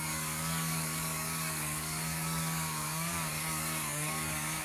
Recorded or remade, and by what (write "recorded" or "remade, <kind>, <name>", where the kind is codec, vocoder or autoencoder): remade, codec, DAC